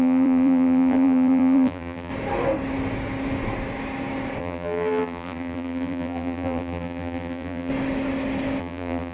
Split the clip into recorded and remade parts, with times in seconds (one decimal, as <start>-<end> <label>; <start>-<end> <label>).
0.0-2.1 remade; 2.1-4.4 recorded; 4.4-7.7 remade; 7.7-8.6 recorded; 8.6-9.1 remade